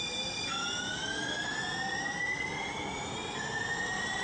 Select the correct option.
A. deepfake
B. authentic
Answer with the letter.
B